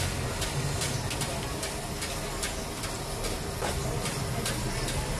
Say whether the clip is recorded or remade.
recorded